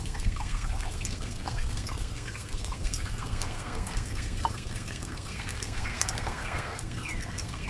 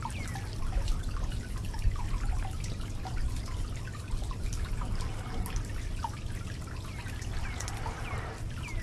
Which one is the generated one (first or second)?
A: first